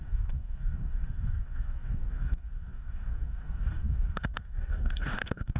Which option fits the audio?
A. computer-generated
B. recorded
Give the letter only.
A